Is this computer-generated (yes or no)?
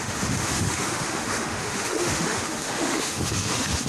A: yes